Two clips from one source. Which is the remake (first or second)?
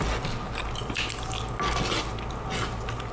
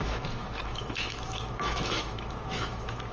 second